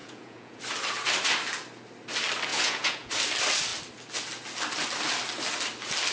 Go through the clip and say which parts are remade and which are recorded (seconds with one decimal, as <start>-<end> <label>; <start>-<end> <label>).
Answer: 0.0-0.6 remade; 0.6-2.5 recorded; 2.5-3.1 remade; 3.1-6.1 recorded

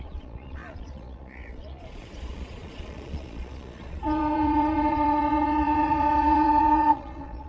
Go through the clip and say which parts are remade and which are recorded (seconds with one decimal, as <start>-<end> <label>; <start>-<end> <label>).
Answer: 0.0-7.5 remade

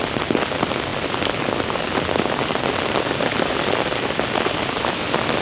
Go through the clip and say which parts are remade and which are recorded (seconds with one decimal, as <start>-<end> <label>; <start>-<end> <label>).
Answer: 0.0-5.4 recorded

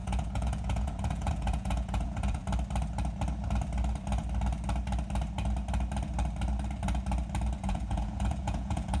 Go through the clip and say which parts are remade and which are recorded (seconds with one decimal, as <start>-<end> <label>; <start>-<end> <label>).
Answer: 0.0-2.4 remade; 2.4-7.6 recorded; 7.6-9.0 remade

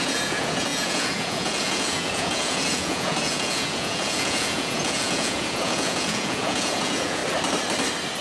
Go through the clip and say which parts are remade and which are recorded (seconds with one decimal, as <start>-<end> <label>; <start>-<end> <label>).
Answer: 0.0-7.2 remade; 7.2-8.2 recorded

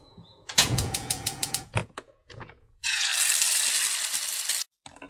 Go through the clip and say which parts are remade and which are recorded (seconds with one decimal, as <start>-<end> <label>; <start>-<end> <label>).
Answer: 0.0-3.1 remade; 3.1-5.1 recorded